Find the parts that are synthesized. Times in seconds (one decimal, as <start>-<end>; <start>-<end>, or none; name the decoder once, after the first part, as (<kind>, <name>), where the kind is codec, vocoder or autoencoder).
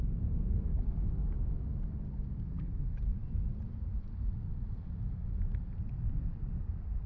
0.0-1.2 (vocoder, BigVGAN v2); 3.0-7.1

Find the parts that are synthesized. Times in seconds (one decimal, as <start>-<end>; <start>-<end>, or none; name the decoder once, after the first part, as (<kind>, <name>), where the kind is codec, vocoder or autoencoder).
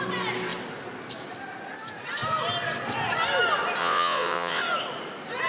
3.8-4.6 (vocoder, WaveNeXt)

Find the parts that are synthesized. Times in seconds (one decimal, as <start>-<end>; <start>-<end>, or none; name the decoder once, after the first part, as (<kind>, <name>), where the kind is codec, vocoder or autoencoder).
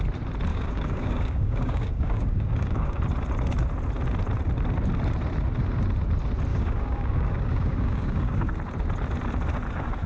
0.5-3.0 (codec, DAC); 6.5-8.5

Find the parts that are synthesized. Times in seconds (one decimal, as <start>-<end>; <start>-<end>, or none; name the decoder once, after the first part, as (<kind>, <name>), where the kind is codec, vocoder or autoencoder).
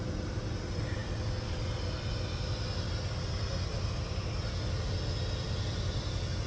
none